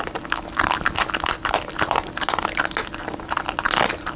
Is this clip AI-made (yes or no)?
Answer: no